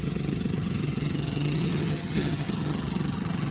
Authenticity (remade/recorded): remade